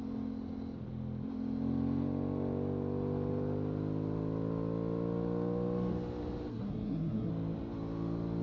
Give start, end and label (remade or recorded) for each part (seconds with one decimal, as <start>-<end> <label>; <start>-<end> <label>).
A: 0.0-6.5 recorded; 6.5-7.3 remade; 7.3-8.4 recorded